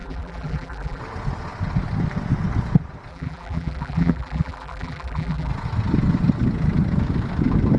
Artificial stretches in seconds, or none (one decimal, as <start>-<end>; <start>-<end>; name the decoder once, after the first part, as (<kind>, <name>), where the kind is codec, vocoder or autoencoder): 0.0-1.0 (vocoder, BigVGAN v2); 3.1-5.5

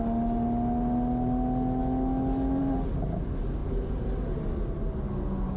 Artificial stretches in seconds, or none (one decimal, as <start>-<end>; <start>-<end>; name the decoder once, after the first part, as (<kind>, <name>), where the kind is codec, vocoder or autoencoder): none

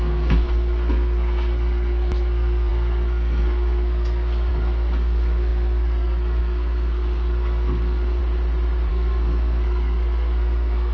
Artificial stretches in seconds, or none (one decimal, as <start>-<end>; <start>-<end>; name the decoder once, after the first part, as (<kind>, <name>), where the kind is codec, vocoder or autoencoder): 0.0-8.2 (codec, SNAC); 8.9-10.9

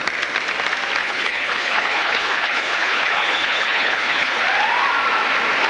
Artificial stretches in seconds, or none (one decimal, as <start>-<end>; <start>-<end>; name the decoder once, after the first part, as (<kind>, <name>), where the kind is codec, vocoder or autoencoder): 1.0-4.4 (codec, HILCodec)

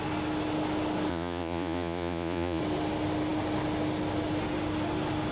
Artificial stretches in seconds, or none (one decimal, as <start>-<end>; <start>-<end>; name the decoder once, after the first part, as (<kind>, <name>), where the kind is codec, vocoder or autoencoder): 1.1-2.6 (vocoder, Vocos)

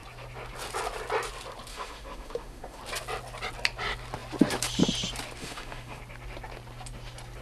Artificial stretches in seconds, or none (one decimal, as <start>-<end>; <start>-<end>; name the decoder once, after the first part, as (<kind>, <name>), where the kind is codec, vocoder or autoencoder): 1.7-2.8 (autoencoder, DAC-VAE); 5.4-6.0

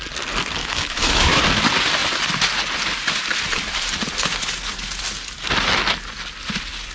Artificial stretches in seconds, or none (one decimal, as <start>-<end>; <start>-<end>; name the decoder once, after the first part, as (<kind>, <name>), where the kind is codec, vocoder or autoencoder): 0.6-1.4 (autoencoder, DAC-VAE)